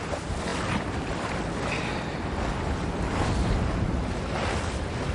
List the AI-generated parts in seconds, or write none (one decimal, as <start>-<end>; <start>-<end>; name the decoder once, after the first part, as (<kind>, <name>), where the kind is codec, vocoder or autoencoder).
none